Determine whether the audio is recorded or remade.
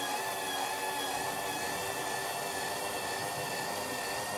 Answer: recorded